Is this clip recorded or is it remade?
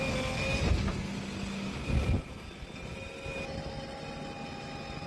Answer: recorded